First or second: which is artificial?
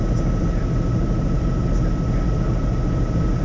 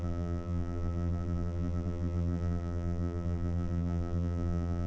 second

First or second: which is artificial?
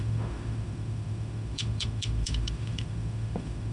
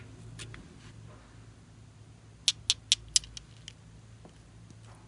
first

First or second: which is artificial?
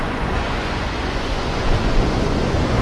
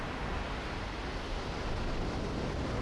first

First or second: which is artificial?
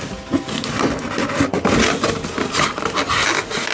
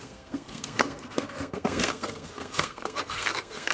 second